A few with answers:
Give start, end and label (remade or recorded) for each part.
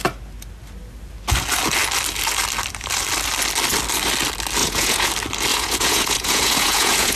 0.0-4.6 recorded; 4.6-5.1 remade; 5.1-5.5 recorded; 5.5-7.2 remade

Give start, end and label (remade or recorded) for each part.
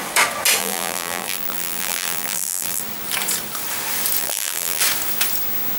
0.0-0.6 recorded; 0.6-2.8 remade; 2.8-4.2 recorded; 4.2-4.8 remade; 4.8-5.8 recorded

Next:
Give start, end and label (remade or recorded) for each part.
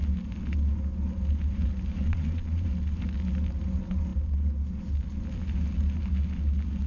0.0-2.0 recorded; 2.0-2.7 remade; 2.7-6.9 recorded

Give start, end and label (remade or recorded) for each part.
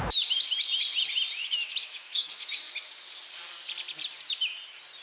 0.0-1.4 recorded; 1.4-2.7 remade; 2.7-5.0 recorded